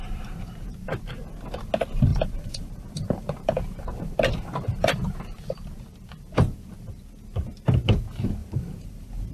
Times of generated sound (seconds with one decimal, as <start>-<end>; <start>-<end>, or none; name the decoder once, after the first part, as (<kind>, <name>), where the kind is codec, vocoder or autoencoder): 2.1-5.2 (vocoder, BigVGAN v2); 8.4-9.3